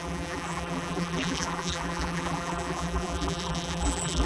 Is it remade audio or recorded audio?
remade